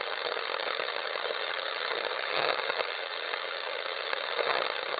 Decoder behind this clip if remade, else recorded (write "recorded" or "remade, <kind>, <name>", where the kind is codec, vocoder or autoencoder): remade, vocoder, HiFi-GAN